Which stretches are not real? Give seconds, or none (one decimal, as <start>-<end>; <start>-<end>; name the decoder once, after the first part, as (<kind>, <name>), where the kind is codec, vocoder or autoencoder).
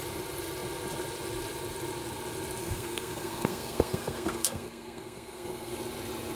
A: 2.6-5.7 (codec, SNAC)